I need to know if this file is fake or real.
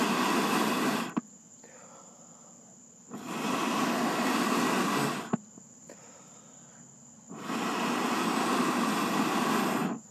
real